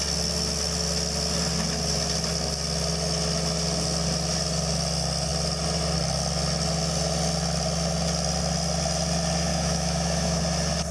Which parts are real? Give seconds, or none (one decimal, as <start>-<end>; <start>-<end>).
0.0-9.5; 10.4-10.9